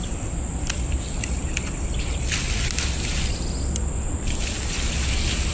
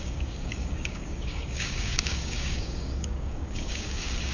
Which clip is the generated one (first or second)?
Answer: second